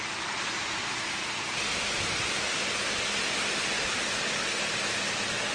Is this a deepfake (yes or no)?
no